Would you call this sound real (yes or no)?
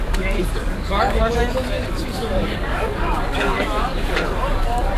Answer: no